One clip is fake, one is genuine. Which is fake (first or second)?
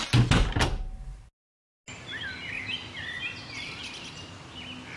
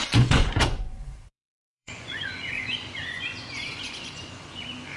second